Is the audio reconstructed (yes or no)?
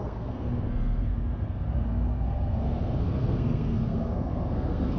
yes